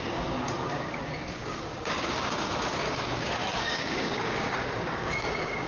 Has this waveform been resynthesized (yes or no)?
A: yes